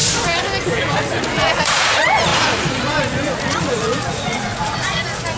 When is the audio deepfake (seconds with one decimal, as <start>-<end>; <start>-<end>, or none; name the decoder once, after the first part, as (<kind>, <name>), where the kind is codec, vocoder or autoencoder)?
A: 1.2-5.4 (vocoder, Vocos)